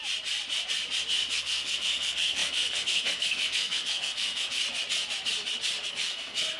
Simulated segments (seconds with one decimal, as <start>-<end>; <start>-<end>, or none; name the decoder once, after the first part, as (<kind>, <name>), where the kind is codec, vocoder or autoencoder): 1.3-4.6 (codec, SNAC); 5.9-6.6

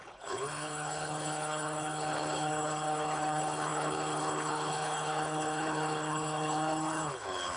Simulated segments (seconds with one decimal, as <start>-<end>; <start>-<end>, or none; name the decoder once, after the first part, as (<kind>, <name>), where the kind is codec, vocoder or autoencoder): 0.0-7.6 (codec, HILCodec)